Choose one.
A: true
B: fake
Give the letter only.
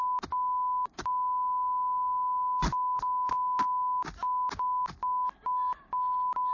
A